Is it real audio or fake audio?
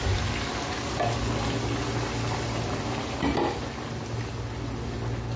real